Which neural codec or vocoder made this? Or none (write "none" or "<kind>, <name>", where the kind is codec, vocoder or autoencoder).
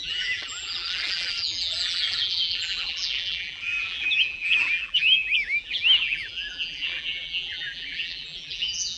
vocoder, BigVGAN v2